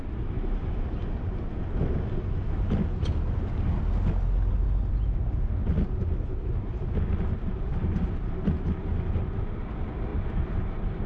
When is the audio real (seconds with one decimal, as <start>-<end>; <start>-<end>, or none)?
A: 0.0-11.1